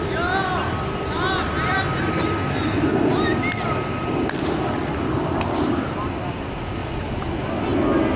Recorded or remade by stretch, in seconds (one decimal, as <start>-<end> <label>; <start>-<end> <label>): 0.0-6.8 recorded; 6.8-7.6 remade; 7.6-8.2 recorded